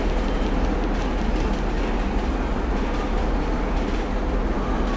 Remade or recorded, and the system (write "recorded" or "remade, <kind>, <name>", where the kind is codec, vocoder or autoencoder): recorded